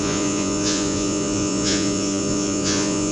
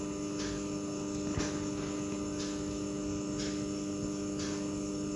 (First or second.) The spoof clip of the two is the first